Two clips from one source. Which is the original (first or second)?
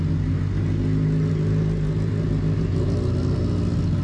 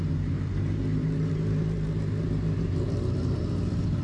first